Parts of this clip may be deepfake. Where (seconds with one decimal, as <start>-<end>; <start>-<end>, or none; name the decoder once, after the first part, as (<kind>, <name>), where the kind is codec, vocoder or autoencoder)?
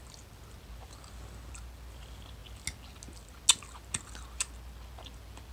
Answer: none